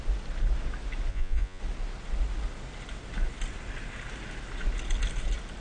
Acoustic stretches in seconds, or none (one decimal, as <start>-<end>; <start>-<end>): 0.0-1.1; 1.6-5.6